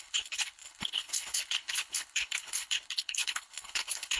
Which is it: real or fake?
fake